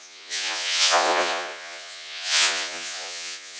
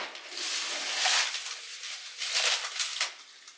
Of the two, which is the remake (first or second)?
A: first